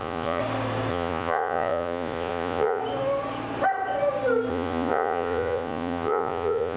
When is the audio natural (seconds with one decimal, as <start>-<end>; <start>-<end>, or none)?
0.4-0.9; 2.8-4.5